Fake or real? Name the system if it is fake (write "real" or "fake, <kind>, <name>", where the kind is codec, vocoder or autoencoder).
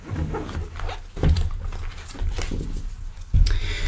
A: real